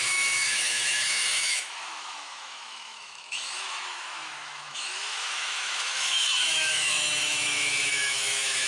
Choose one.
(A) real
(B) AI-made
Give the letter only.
B